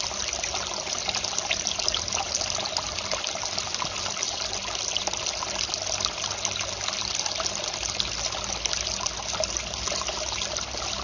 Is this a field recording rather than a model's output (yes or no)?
yes